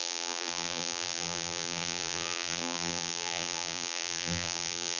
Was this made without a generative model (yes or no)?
no